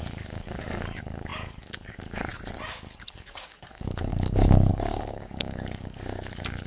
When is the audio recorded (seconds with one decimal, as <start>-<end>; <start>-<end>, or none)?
2.3-3.1